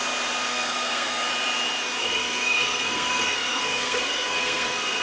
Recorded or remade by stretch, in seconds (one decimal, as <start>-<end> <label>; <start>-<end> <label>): 0.0-0.5 recorded; 0.5-1.3 remade; 1.3-2.0 recorded; 2.0-5.0 remade